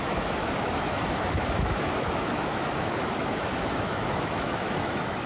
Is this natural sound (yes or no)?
no